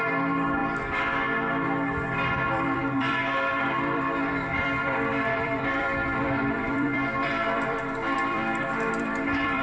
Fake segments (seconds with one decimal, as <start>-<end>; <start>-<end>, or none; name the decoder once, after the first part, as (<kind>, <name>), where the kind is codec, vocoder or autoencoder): 0.0-0.6 (vocoder, BigVGAN v2); 2.5-8.4; 8.9-9.6